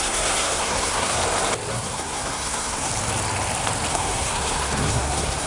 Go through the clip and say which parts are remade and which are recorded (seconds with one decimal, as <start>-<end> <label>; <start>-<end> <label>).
0.0-1.2 remade; 1.2-1.7 recorded; 1.7-2.9 remade; 2.9-3.9 recorded; 3.9-5.5 remade